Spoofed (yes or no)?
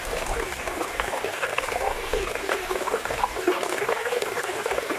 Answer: yes